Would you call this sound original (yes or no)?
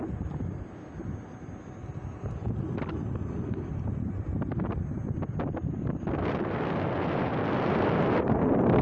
yes